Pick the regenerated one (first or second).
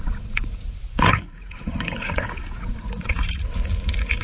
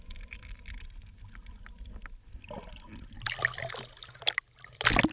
first